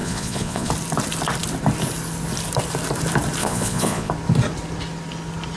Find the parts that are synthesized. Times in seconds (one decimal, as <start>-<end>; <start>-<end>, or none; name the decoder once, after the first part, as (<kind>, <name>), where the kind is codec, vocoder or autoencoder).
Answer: 0.0-0.7 (vocoder, Vocos); 3.4-4.1